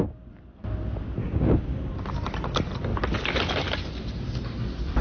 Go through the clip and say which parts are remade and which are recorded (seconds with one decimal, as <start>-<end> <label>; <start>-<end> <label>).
0.0-1.2 recorded; 1.2-1.9 remade; 1.9-5.0 recorded